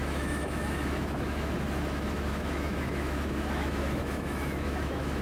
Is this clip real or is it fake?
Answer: fake